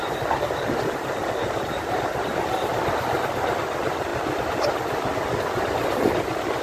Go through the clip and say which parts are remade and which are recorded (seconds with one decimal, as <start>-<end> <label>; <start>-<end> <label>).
0.0-1.4 recorded; 1.4-1.9 remade; 1.9-6.6 recorded